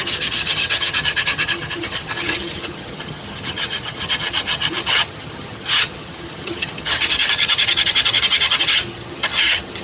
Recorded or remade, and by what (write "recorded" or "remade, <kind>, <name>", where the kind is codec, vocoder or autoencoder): remade, vocoder, HiFi-GAN